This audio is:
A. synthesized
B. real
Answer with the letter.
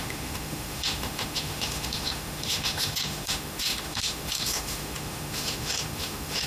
A